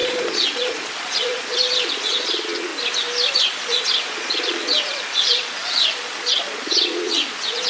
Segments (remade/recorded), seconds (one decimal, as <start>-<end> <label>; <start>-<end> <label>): 0.0-2.7 remade; 2.7-3.3 recorded; 3.3-7.7 remade